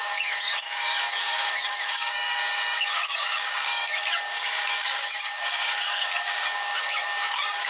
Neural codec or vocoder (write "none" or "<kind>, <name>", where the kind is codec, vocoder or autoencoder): codec, DAC